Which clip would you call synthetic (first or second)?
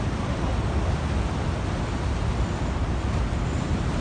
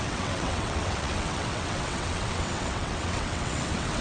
second